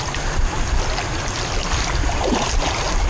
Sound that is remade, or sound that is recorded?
recorded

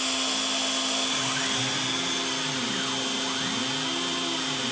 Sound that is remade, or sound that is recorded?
recorded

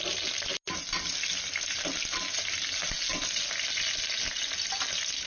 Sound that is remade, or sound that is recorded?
recorded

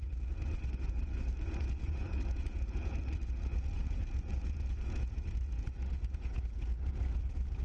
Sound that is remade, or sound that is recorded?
remade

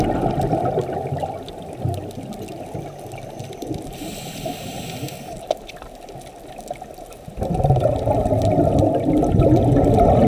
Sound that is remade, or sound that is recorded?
recorded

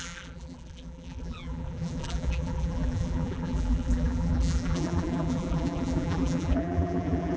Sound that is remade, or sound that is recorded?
remade